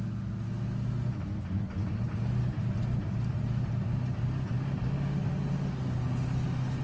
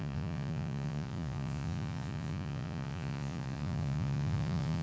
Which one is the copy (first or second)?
second